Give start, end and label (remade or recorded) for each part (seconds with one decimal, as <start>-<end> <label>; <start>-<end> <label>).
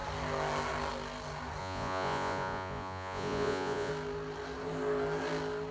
0.0-1.6 recorded; 1.6-3.9 remade; 3.9-5.7 recorded